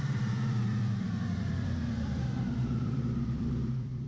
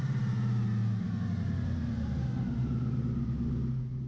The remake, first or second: first